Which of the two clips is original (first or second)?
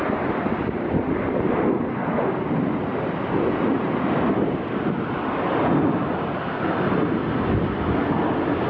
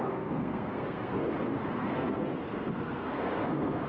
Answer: first